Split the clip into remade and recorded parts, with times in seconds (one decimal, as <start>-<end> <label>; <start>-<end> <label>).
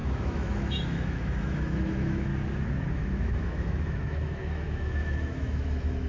0.0-2.3 remade; 2.3-2.9 recorded; 2.9-6.1 remade